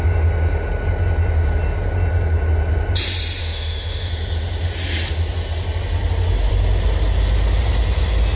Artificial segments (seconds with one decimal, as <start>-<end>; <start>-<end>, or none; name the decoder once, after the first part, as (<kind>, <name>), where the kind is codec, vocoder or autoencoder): 3.4-4.1 (autoencoder, DAC-VAE)